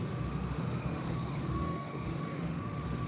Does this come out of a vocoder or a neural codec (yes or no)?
yes